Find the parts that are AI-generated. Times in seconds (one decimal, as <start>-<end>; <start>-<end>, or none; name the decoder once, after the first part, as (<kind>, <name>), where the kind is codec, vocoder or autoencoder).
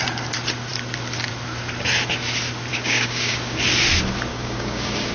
2.7-3.6 (codec, DAC); 4.3-5.1